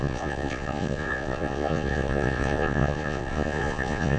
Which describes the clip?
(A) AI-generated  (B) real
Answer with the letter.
A